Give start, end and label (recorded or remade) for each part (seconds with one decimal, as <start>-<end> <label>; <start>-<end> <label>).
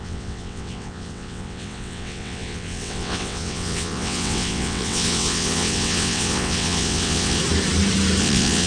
0.0-7.4 remade; 7.4-8.2 recorded; 8.2-8.7 remade